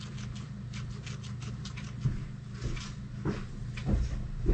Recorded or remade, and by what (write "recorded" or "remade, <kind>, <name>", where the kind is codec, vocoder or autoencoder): recorded